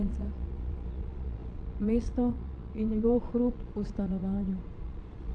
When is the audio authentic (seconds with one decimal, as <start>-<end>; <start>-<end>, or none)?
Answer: none